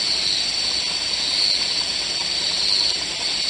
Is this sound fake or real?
real